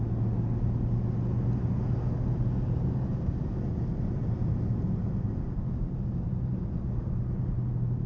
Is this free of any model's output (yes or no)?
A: yes